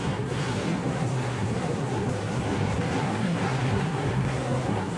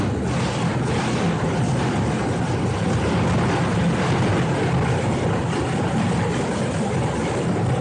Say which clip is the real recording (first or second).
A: second